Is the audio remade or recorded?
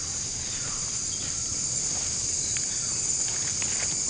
recorded